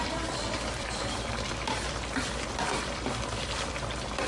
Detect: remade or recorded remade